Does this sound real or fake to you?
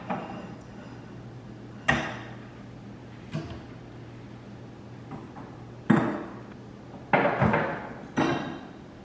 real